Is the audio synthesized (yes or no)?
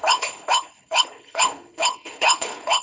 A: yes